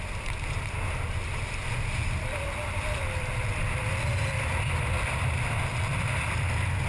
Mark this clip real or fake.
real